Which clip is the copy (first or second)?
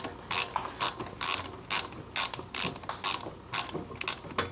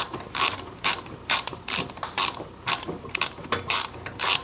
second